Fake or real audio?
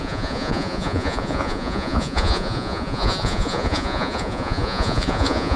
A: fake